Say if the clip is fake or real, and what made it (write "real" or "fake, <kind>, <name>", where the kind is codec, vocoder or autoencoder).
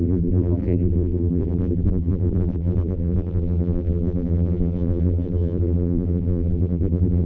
fake, vocoder, BigVGAN v2